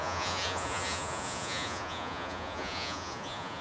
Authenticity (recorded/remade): remade